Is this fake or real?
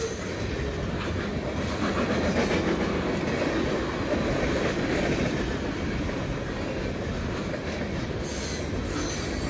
real